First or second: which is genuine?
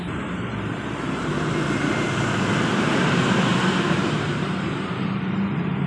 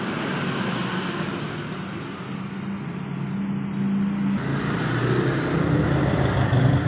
second